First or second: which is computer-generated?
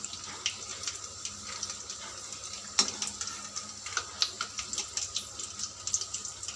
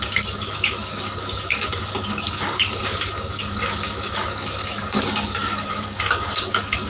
second